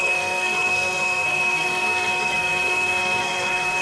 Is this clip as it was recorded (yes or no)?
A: no